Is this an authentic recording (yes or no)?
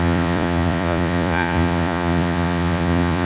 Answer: no